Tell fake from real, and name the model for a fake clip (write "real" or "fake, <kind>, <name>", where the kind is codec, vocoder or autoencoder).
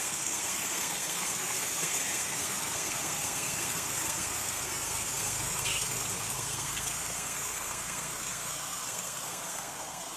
fake, codec, SNAC